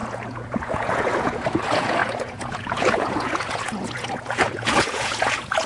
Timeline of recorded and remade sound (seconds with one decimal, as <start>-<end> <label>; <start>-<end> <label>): 0.0-5.7 remade